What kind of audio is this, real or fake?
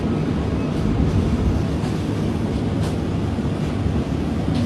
real